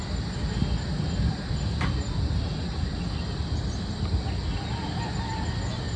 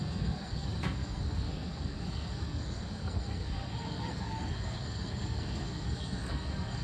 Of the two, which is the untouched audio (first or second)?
first